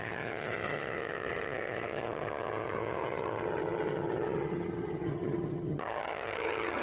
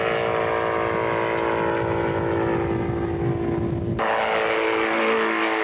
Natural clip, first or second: second